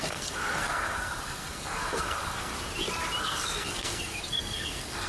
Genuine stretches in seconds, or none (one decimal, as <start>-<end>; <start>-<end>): 2.5-3.2